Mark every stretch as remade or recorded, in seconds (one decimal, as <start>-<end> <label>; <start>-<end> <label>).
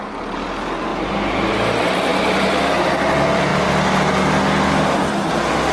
0.0-0.9 recorded; 0.9-1.5 remade; 1.5-5.7 recorded